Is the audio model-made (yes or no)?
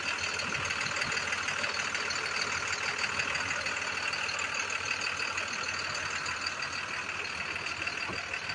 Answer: no